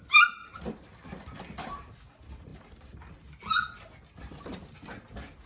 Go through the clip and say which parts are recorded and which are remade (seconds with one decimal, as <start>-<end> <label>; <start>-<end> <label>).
0.0-5.5 recorded